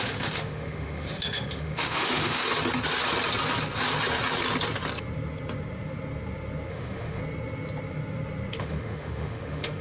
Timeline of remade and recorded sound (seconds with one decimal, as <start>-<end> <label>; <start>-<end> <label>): 0.0-2.4 remade; 2.4-6.7 recorded; 6.7-7.2 remade; 7.2-8.6 recorded; 8.6-9.8 remade